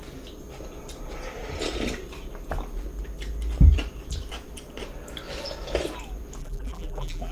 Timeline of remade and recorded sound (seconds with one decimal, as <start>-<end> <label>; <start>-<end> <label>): 0.0-6.4 recorded; 6.4-7.3 remade